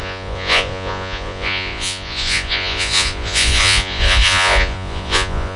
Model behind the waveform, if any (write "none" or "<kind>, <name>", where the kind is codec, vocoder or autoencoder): vocoder, Vocos